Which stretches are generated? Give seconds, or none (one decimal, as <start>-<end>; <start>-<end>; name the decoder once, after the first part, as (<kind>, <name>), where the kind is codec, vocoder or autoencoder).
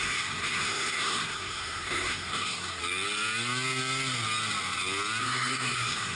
0.0-2.8 (codec, SNAC); 5.2-6.1